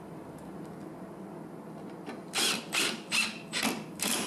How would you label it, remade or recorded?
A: recorded